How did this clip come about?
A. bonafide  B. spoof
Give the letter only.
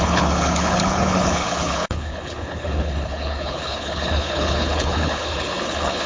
B